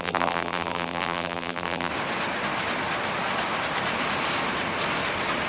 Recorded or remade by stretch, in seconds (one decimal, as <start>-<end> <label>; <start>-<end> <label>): 0.0-1.9 remade; 1.9-5.5 recorded